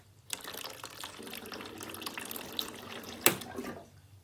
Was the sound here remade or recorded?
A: recorded